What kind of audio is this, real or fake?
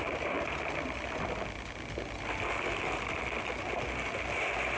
real